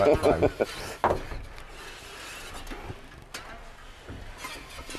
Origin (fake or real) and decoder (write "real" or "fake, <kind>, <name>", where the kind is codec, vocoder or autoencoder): real